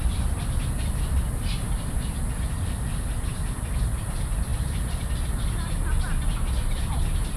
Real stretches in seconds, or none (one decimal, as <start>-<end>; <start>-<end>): 0.0-7.4